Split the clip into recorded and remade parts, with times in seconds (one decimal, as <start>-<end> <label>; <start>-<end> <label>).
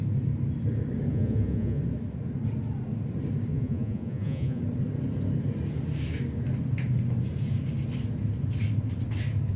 0.0-1.1 recorded; 1.1-1.8 remade; 1.8-3.5 recorded; 3.5-4.6 remade; 4.6-9.6 recorded